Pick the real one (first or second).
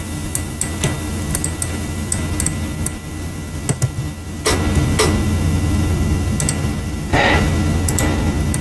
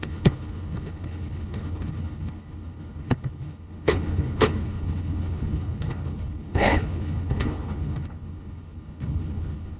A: first